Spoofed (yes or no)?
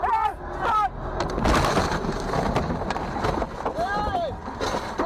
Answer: no